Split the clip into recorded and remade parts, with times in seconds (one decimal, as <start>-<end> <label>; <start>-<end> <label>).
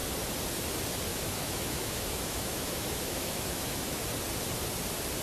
0.0-1.1 recorded; 1.1-4.0 remade; 4.0-5.2 recorded